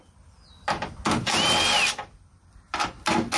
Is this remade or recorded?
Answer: recorded